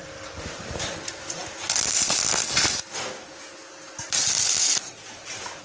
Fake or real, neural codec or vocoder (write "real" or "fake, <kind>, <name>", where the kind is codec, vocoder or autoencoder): real